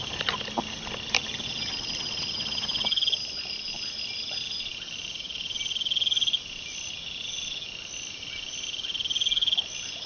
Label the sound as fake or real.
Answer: real